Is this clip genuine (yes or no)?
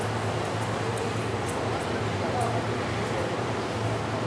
yes